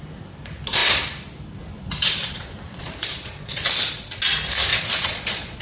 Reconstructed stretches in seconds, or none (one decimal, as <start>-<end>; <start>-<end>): 2.2-4.2; 4.7-5.6